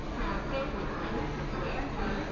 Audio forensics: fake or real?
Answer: real